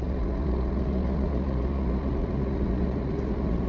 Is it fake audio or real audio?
fake